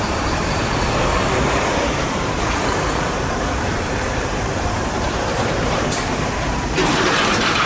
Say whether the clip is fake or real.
fake